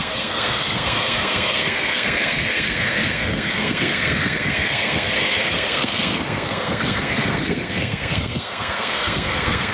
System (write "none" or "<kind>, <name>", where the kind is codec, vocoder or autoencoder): codec, SNAC